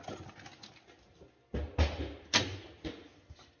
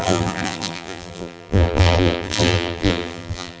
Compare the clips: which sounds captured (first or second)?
first